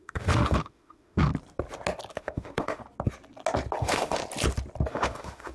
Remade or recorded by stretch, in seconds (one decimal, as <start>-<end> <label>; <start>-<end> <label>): 0.0-1.3 remade; 1.3-2.1 recorded; 2.1-2.8 remade; 2.8-3.8 recorded; 3.8-4.2 remade; 4.2-4.9 recorded; 4.9-5.5 remade

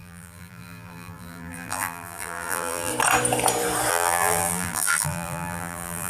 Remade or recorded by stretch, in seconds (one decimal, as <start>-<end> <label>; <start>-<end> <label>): 0.0-2.9 remade; 2.9-3.9 recorded; 3.9-6.1 remade

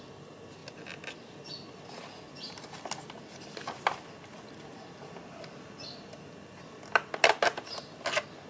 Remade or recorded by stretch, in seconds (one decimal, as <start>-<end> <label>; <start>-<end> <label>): 0.0-8.5 recorded

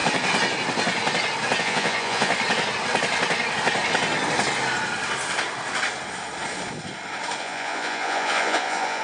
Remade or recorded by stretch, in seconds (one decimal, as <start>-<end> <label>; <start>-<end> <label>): 0.0-1.6 recorded; 1.6-2.3 remade; 2.3-7.4 recorded; 7.4-9.0 remade